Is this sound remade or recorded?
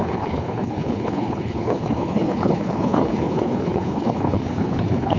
remade